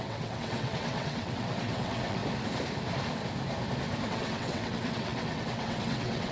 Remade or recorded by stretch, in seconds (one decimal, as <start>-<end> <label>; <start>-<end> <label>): 0.0-2.2 remade; 2.2-4.1 recorded; 4.1-6.3 remade